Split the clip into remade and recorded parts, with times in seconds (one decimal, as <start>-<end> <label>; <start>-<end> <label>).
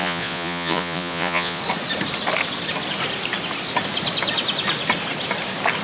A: 0.0-1.6 remade; 1.6-5.8 recorded